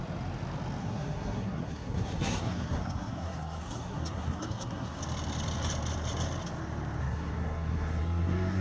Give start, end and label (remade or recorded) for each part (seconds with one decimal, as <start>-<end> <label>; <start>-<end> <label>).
0.0-0.8 recorded; 0.8-5.0 remade; 5.0-7.0 recorded; 7.0-8.6 remade